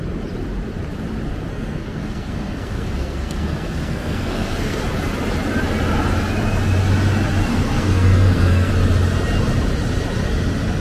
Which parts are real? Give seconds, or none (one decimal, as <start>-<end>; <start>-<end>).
0.0-1.5; 4.8-7.5; 8.7-10.8